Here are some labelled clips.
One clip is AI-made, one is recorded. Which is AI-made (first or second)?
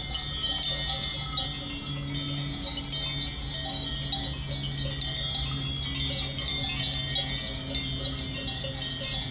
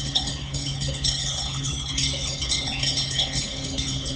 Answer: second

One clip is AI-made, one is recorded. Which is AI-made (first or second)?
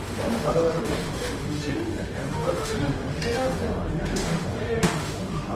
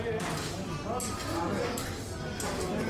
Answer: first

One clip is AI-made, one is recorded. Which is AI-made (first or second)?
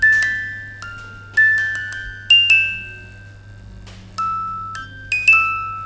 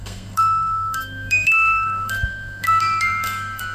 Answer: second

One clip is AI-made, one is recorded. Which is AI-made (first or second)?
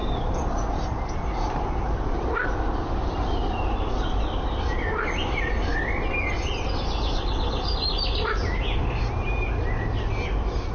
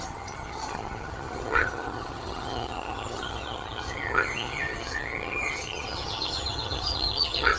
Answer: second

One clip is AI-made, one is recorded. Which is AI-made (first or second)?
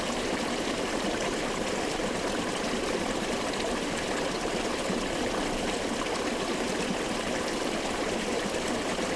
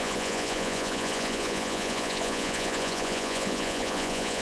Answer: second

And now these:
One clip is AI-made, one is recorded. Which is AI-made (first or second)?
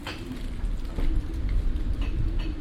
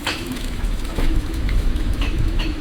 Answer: second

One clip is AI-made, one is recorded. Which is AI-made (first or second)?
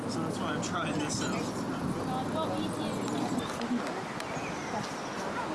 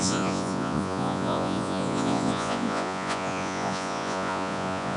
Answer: second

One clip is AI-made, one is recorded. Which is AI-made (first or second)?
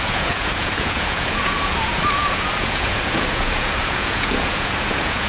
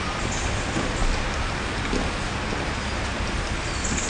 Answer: first